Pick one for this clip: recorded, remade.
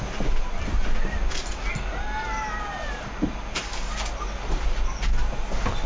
recorded